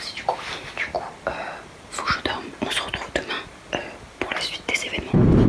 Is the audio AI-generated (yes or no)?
no